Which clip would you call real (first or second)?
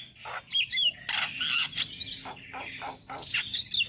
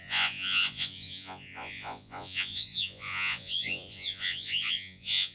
first